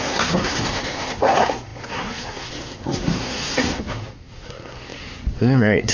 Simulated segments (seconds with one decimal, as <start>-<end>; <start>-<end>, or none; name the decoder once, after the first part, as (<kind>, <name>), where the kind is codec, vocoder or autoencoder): 0.0-5.9 (codec, SNAC)